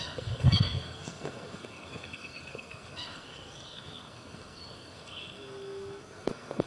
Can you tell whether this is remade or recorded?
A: remade